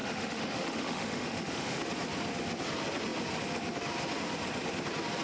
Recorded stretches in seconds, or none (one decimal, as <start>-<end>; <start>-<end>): 1.8-5.2